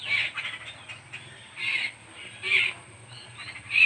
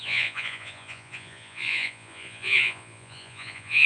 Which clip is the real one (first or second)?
first